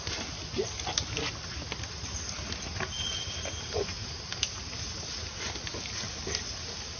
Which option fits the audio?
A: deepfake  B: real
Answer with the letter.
B